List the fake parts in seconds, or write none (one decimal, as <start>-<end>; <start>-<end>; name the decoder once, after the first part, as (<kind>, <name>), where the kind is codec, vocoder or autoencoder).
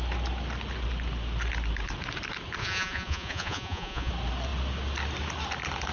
2.6-4.1 (vocoder, Vocos)